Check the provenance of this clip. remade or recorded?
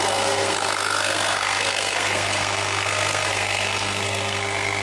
remade